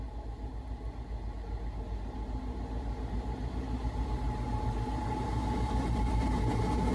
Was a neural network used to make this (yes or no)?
no